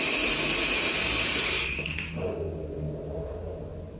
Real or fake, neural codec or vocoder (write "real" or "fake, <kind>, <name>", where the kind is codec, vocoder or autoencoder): real